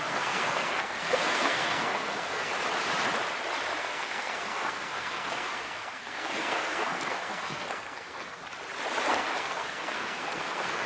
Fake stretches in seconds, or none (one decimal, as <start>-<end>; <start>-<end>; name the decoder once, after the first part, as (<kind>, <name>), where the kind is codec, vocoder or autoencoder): 0.0-2.5 (codec, SNAC); 3.8-8.4; 9.1-10.9